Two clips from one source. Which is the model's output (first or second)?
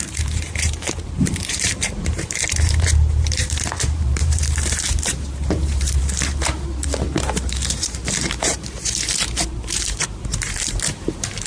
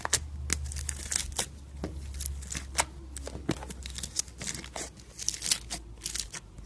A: first